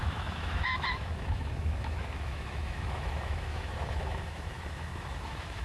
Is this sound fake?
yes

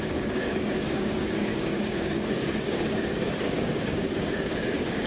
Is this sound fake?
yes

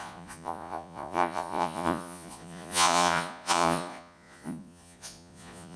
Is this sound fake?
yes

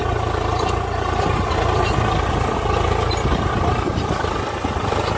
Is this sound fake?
no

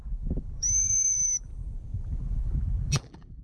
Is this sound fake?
yes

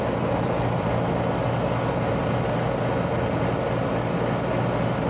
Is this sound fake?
no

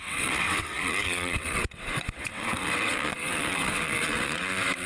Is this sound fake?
yes